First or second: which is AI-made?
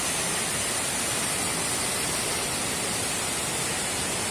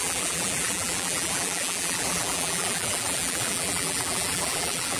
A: second